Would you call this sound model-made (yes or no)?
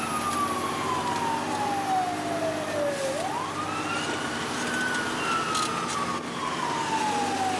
no